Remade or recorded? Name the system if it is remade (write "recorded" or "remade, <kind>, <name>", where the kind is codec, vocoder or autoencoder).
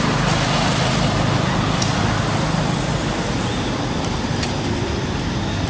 recorded